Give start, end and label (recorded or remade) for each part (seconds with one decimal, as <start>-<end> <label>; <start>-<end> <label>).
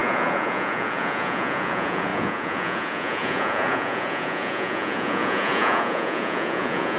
0.0-7.0 remade